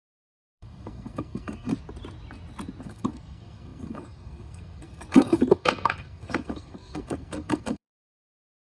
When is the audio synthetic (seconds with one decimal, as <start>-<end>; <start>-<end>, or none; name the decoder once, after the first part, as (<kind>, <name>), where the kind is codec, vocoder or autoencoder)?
0.0-1.7 (codec, SNAC); 2.8-8.8

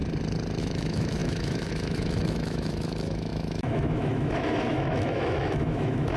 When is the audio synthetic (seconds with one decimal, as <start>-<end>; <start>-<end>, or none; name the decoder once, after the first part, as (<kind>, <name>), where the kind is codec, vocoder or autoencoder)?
0.6-6.2 (autoencoder, DAC-VAE)

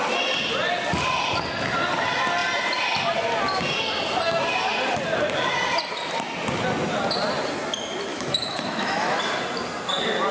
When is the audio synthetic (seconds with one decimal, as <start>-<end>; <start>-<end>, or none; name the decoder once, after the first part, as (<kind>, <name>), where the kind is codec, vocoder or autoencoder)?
8.1-9.2 (autoencoder, DAC-VAE)

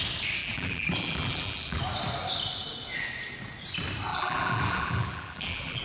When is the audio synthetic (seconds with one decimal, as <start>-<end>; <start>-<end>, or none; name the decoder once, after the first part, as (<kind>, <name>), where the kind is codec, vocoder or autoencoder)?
0.4-1.8 (vocoder, BigVGAN v2); 4.1-5.8

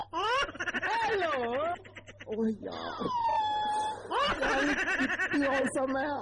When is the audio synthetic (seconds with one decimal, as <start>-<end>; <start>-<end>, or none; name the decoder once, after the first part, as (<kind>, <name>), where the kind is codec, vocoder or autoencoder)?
0.0-0.7 (vocoder, BigVGAN v2)

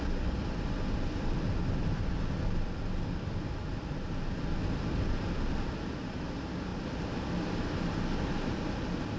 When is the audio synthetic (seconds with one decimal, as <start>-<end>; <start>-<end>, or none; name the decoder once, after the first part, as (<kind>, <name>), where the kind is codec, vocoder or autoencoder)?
0.4-1.5 (vocoder, BigVGAN v2)